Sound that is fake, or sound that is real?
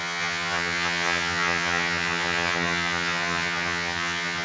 fake